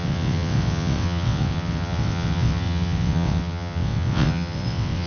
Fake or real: fake